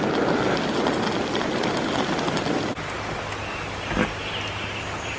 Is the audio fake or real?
real